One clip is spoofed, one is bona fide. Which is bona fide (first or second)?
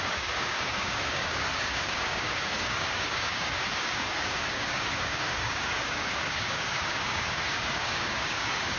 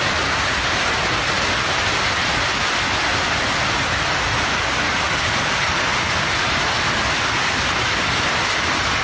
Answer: second